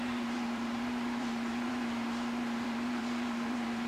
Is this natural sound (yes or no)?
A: no